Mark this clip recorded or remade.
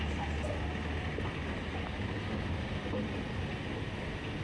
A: recorded